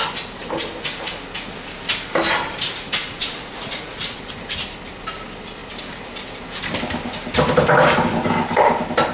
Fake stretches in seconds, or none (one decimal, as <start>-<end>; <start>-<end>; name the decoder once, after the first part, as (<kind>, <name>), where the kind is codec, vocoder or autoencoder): 3.0-4.2 (vocoder, Vocos)